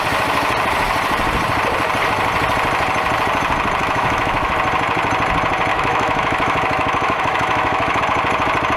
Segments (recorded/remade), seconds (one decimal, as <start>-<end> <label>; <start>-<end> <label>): 0.0-3.8 recorded; 3.8-4.5 remade; 4.5-5.7 recorded; 5.7-8.0 remade; 8.0-8.8 recorded